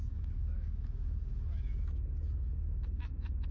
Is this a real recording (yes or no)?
no